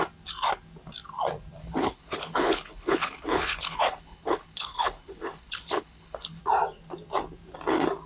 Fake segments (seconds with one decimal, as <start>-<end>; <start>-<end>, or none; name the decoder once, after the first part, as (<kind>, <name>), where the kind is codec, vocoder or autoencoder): 1.6-6.4 (codec, HILCodec)